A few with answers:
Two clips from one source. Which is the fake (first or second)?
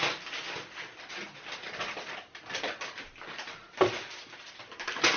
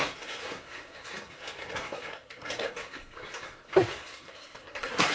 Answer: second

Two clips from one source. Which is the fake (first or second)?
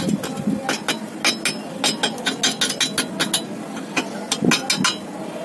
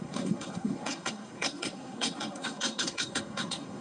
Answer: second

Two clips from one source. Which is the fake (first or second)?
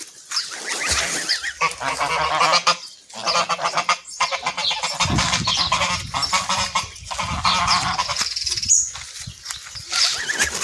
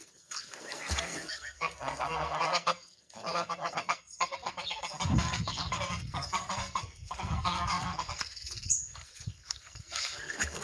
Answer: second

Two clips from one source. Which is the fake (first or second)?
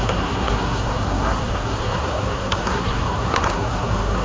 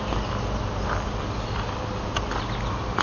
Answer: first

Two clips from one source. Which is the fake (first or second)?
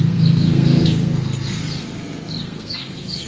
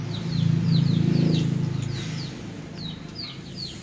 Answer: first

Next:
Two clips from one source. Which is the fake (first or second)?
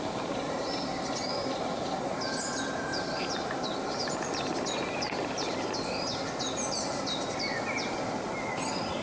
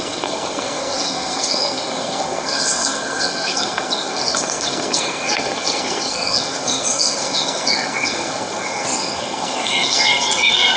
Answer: second